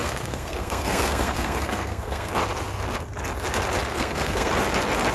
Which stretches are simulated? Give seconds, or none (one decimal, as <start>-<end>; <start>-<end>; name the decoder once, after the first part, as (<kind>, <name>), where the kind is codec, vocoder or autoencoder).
0.0-2.3 (codec, SNAC); 3.9-4.5